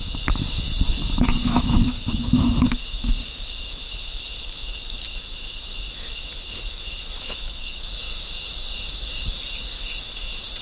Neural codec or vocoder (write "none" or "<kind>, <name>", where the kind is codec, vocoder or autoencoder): autoencoder, DAC-VAE